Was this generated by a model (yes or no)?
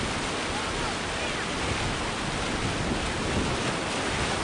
no